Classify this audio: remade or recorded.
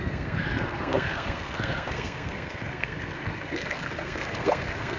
remade